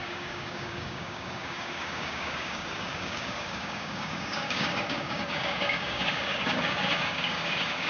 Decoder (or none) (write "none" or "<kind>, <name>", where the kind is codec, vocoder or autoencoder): codec, DAC